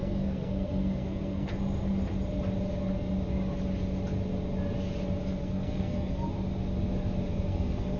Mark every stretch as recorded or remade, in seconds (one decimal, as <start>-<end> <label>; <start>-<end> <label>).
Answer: 0.0-1.5 remade; 1.5-5.4 recorded; 5.4-6.3 remade; 6.3-7.3 recorded; 7.3-8.0 remade